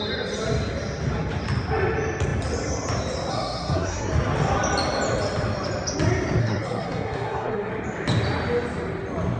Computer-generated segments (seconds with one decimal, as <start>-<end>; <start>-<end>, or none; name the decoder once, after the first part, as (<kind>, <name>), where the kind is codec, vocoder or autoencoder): 3.3-4.1 (codec, SNAC); 6.4-7.7